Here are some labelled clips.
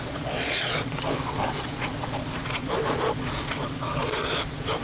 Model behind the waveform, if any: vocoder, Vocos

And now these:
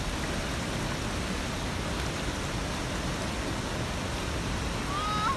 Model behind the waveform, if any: none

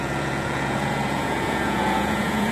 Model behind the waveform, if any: vocoder, Vocos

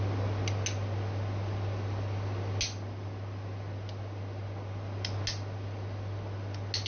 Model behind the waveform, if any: none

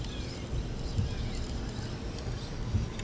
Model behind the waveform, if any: none